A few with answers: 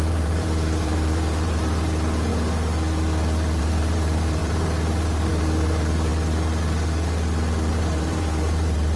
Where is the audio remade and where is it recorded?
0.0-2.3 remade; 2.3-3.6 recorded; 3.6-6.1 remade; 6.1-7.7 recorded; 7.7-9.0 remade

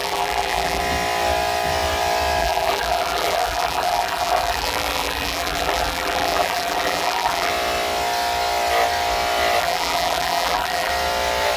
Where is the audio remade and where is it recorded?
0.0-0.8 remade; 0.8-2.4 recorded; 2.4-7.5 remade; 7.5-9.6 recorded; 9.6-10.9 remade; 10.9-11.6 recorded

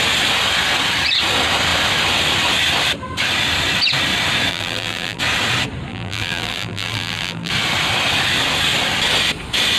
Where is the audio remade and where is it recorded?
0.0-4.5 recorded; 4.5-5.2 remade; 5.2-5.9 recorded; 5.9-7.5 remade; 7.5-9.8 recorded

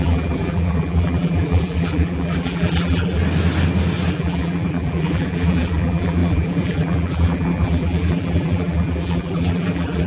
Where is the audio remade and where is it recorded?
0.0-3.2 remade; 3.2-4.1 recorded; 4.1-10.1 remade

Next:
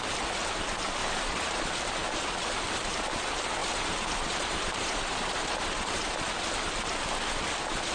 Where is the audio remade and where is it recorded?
0.0-1.0 recorded; 1.0-1.6 remade; 1.6-3.6 recorded; 3.6-6.2 remade; 6.2-7.9 recorded